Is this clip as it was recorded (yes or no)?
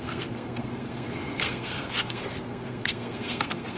no